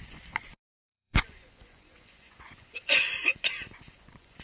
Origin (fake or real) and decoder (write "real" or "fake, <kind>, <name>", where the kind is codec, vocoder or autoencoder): fake, vocoder, Vocos